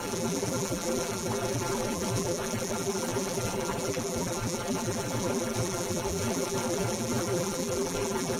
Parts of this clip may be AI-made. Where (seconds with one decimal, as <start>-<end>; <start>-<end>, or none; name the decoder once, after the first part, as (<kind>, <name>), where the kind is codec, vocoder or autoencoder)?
0.0-8.4 (vocoder, BigVGAN v2)